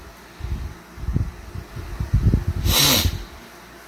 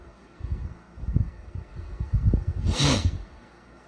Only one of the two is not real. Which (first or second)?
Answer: second